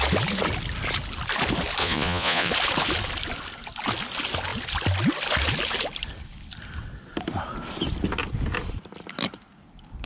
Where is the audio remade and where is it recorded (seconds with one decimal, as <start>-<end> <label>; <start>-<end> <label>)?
0.0-1.8 recorded; 1.8-2.5 remade; 2.5-10.1 recorded